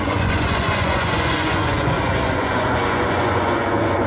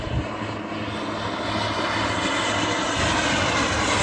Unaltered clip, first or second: second